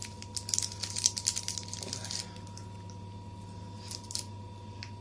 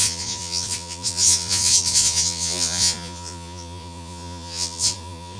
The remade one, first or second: second